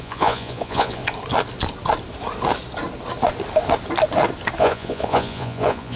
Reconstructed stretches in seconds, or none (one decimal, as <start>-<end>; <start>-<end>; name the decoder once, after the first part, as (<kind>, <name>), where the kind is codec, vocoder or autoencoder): 0.0-1.0 (vocoder, Vocos); 4.6-6.0